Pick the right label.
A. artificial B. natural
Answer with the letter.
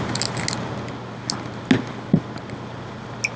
B